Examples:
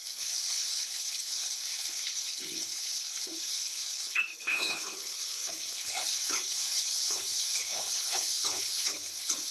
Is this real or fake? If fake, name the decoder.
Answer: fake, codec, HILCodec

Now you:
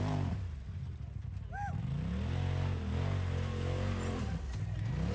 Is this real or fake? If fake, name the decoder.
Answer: real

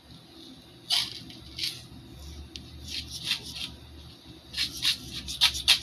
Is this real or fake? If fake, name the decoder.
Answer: real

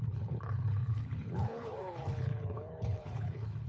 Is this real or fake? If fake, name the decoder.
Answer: fake, codec, HILCodec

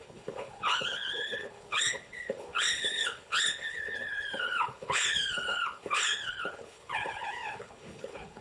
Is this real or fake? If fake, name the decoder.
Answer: fake, codec, HILCodec